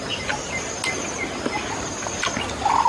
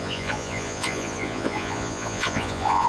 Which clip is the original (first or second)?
first